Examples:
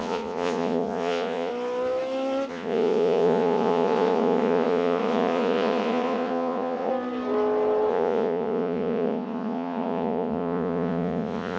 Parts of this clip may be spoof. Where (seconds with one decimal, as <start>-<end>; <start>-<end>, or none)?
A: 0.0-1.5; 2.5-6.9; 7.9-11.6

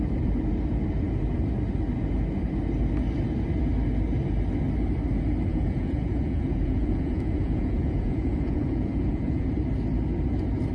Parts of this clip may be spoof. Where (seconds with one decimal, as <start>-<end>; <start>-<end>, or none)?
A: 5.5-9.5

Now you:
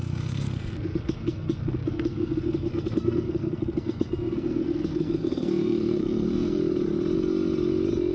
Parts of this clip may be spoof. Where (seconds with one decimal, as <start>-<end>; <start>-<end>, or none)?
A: 0.0-6.6

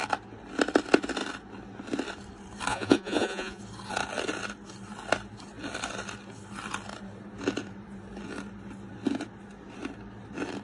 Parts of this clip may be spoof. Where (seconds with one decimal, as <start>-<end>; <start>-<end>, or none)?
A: 2.7-3.6

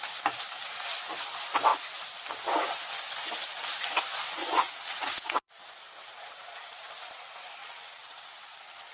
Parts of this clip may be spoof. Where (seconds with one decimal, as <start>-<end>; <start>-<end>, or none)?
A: 4.4-5.5; 7.6-8.4

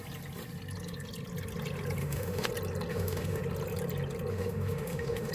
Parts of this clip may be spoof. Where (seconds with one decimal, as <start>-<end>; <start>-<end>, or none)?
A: 2.0-2.5; 2.9-3.4; 4.3-5.3

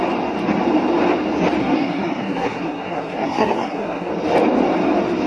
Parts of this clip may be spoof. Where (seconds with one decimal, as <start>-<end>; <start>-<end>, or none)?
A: 1.6-4.1

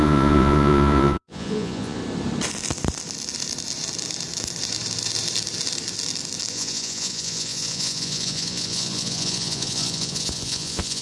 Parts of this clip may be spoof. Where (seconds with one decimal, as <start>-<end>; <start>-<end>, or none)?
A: 0.0-2.0; 6.5-11.0